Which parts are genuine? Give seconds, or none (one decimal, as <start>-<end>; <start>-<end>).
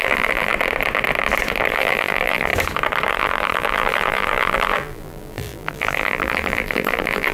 0.5-1.7; 2.5-3.1